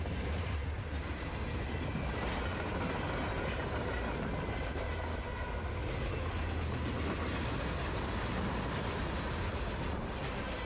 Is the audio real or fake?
real